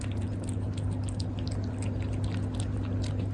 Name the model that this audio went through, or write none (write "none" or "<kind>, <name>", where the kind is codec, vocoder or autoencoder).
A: none